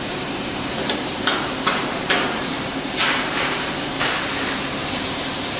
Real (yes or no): no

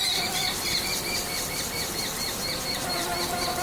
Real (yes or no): no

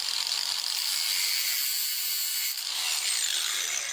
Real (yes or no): yes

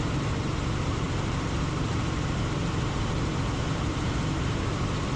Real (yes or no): no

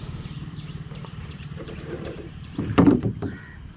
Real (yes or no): no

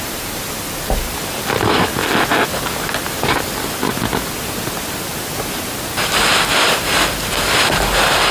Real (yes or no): yes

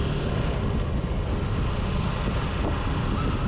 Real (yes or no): yes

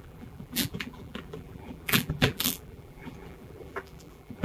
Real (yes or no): no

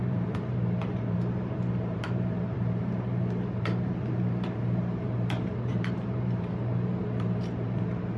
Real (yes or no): no